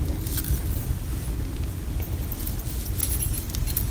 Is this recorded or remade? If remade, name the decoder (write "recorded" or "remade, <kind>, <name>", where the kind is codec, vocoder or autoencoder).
recorded